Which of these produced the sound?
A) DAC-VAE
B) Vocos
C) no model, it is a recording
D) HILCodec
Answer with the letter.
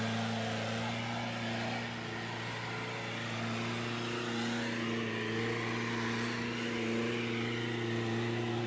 C